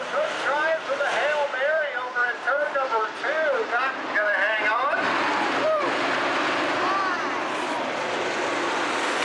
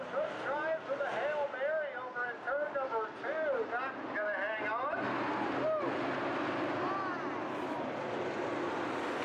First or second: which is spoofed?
first